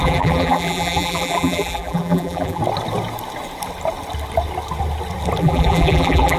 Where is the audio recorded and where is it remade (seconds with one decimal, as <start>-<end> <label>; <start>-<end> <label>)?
0.0-2.6 remade; 2.6-5.4 recorded; 5.4-6.4 remade